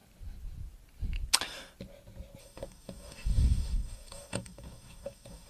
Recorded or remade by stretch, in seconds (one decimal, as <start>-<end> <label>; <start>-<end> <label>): 0.0-2.4 recorded; 2.4-5.5 remade